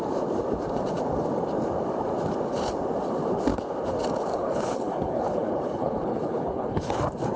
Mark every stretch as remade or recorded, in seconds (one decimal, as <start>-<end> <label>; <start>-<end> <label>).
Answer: 0.0-4.3 recorded; 4.3-6.9 remade; 6.9-7.4 recorded